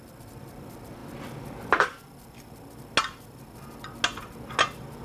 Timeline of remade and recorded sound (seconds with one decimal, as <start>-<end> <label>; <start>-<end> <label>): 0.0-1.9 remade; 1.9-5.0 recorded